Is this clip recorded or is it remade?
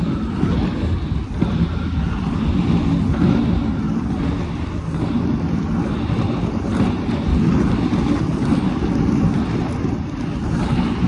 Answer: recorded